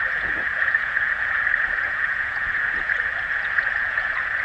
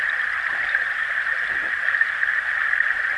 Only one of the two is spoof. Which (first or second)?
first